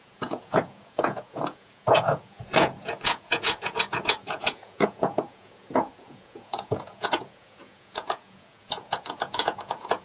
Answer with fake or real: fake